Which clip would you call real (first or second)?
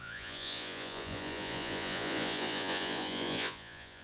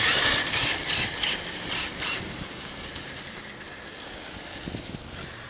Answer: second